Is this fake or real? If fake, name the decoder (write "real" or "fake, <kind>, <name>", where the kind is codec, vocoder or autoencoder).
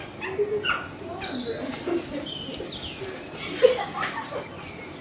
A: real